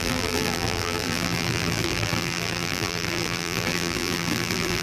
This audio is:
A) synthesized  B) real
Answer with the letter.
A